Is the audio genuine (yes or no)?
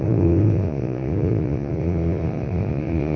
no